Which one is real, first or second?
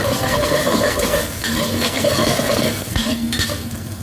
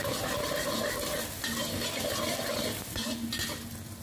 second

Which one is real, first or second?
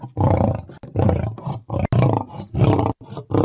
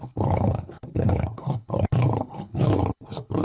first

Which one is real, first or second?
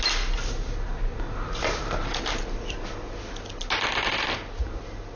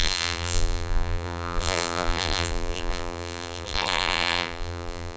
first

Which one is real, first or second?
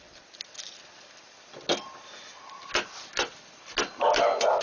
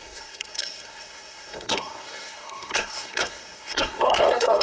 first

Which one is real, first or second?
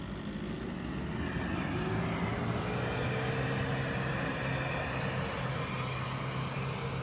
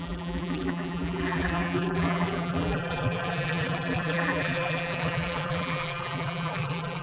first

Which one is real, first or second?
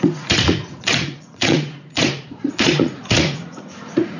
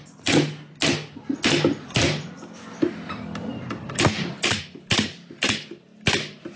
second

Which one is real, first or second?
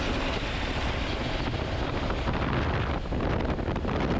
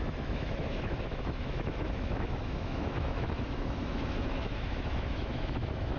first